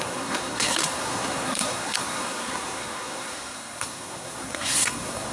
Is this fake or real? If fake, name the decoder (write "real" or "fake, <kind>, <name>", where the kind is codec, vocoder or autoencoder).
fake, codec, SNAC